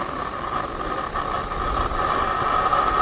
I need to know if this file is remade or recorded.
recorded